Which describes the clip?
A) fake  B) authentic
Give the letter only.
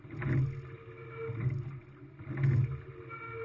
B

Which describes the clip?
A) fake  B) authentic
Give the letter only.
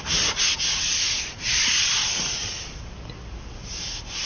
B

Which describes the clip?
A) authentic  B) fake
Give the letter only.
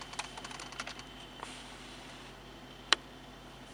B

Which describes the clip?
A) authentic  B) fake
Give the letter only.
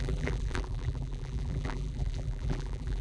B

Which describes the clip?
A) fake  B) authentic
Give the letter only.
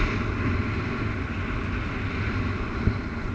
B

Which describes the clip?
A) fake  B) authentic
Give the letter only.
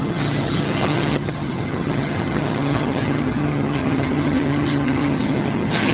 A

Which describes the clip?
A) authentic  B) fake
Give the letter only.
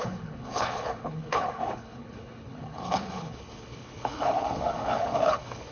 B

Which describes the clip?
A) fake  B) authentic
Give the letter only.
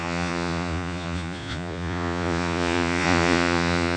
A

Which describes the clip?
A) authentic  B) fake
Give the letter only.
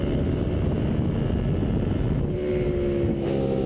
A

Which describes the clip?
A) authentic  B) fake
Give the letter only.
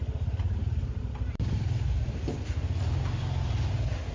A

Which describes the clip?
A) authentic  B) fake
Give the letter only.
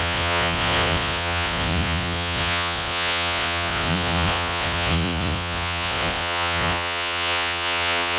B